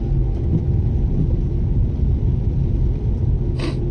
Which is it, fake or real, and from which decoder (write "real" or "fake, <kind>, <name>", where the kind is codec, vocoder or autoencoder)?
real